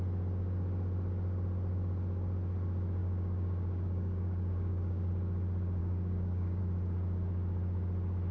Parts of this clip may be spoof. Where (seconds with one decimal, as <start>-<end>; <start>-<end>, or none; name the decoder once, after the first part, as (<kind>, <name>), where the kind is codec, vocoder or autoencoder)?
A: 3.0-5.1 (codec, DAC); 5.8-6.6